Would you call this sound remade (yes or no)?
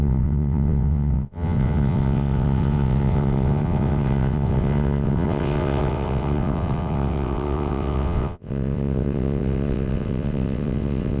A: yes